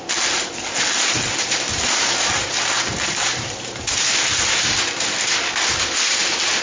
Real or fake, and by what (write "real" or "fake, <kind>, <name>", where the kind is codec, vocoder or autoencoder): real